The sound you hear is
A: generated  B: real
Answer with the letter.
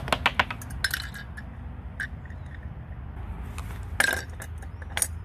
B